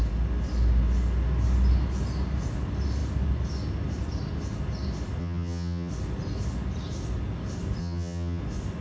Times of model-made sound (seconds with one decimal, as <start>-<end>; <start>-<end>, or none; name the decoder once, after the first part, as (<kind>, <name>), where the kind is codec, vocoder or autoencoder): 5.2-5.9 (vocoder, HiFi-GAN); 7.8-8.4